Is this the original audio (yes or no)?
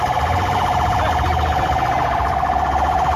yes